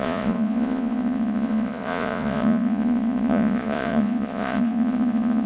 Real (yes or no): no